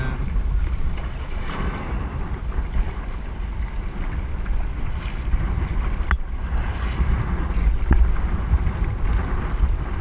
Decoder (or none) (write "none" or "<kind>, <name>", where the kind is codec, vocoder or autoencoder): none